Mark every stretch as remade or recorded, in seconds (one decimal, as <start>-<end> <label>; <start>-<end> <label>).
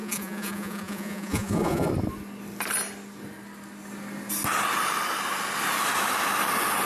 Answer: 0.0-1.9 remade; 1.9-6.9 recorded